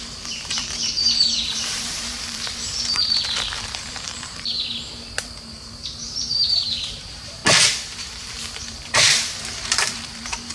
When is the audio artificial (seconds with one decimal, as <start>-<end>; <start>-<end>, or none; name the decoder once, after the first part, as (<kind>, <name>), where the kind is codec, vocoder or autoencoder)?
0.0-4.5 (vocoder, BigVGAN v2); 5.2-7.4; 8.0-10.5